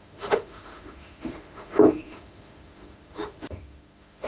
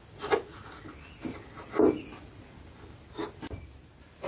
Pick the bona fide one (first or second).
second